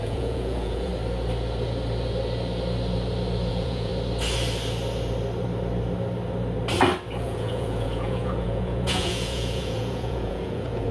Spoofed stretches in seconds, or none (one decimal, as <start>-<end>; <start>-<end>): 0.0-0.9; 3.5-3.9; 7.2-10.9